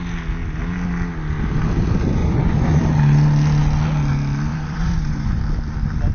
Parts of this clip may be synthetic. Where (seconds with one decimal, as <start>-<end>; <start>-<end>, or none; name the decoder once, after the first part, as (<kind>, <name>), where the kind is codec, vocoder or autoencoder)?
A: 2.2-2.8 (vocoder, Vocos); 4.5-5.4